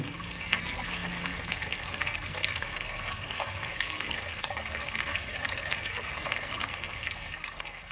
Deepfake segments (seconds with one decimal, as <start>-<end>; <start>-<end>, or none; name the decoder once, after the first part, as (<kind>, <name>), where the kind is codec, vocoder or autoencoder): 0.0-7.9 (codec, SNAC)